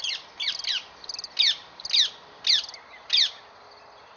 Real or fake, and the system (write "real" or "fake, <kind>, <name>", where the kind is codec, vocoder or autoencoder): real